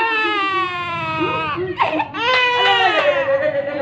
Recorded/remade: recorded